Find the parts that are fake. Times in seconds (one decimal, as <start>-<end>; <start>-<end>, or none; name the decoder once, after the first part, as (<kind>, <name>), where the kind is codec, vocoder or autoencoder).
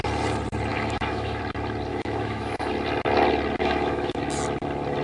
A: 0.7-1.4 (autoencoder, DAC-VAE); 1.9-2.7; 3.6-4.2